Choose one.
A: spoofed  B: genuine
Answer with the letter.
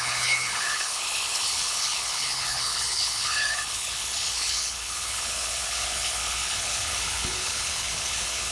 A